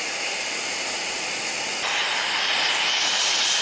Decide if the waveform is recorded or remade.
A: recorded